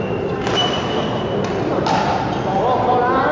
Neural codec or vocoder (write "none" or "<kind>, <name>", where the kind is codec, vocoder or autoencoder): none